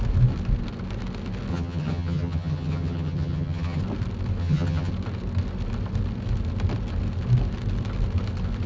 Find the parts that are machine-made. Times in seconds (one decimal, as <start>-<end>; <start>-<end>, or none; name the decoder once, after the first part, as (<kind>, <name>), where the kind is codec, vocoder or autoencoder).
1.5-3.8 (vocoder, HiFi-GAN); 4.4-4.9